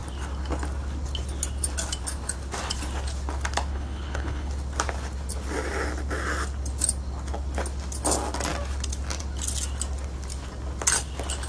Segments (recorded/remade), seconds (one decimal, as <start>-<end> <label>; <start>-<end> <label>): 0.0-3.7 recorded; 3.7-4.5 remade; 4.5-11.5 recorded